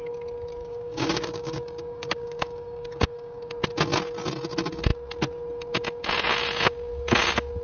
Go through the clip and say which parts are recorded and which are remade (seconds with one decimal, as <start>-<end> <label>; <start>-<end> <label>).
0.0-0.6 recorded; 0.6-3.5 remade; 3.5-7.6 recorded